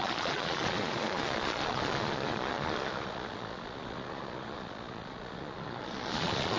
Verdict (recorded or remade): remade